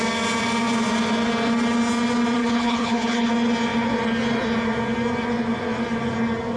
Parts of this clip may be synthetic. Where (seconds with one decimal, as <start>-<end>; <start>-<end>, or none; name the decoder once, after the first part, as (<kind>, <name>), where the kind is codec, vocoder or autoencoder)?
2.4-3.3 (codec, HILCodec)